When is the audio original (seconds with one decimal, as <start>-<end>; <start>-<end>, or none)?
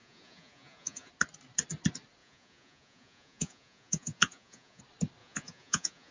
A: 1.1-2.2; 4.8-5.2